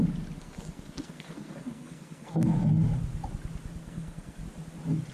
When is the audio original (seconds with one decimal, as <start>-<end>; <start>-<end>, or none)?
0.0-0.4; 2.7-3.8; 4.4-5.1